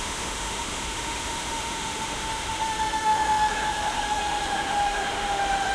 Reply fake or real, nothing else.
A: fake